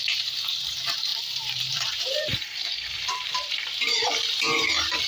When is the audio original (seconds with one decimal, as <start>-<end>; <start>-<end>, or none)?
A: none